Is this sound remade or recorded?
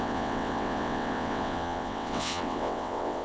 remade